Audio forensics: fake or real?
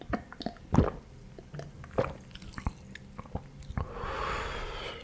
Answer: real